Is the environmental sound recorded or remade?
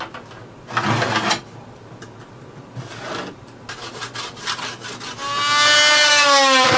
recorded